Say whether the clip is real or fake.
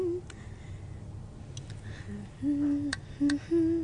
real